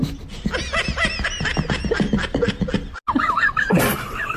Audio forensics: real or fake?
real